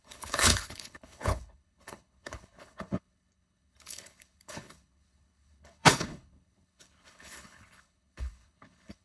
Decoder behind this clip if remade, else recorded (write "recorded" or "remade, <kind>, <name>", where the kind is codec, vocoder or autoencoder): remade, codec, HILCodec